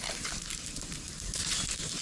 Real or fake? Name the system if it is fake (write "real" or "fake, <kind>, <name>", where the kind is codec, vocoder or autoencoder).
real